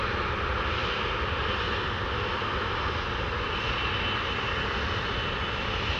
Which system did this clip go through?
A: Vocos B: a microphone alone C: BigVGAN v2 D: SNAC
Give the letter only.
B